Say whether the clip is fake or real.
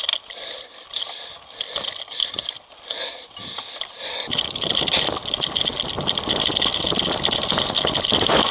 real